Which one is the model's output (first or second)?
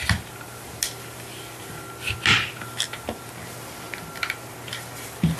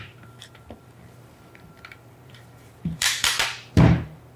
second